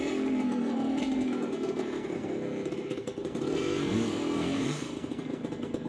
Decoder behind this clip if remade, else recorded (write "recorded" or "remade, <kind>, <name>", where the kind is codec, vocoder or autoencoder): remade, codec, SNAC